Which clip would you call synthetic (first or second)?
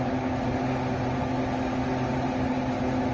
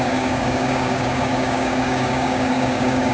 second